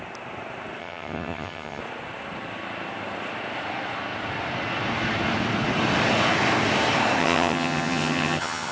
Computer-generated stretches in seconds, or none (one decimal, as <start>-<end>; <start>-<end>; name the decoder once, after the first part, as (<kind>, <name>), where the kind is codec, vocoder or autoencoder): 0.8-1.8 (vocoder, HiFi-GAN); 7.2-8.7